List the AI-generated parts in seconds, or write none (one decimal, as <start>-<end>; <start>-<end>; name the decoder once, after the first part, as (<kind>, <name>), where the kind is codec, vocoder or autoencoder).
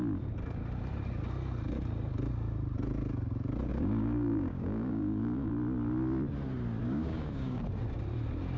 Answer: 3.7-5.5 (codec, DAC); 6.8-7.6